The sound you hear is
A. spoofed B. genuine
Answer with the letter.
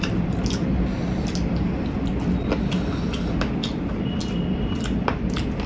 B